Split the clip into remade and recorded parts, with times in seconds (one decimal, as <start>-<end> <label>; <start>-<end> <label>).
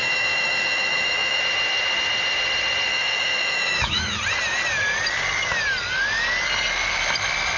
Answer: 0.0-1.4 remade; 1.4-2.9 recorded; 2.9-4.2 remade; 4.2-7.6 recorded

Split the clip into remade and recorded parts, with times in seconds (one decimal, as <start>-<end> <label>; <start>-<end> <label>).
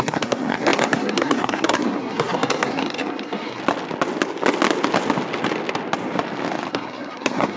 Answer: 0.0-3.6 remade; 3.6-6.7 recorded; 6.7-7.6 remade